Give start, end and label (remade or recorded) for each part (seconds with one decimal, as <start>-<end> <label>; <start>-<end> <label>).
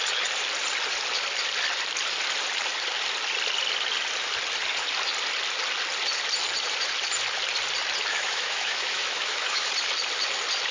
0.0-8.1 recorded; 8.1-9.7 remade; 9.7-10.7 recorded